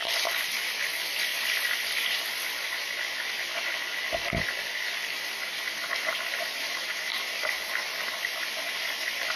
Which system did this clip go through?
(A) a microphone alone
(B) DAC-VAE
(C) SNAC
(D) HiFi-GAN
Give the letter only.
A